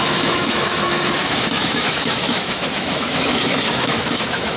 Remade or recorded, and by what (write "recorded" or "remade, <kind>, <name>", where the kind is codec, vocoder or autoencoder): remade, autoencoder, DAC-VAE